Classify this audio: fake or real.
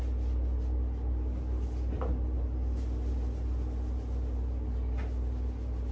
real